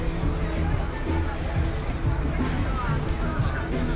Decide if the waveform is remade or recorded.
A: recorded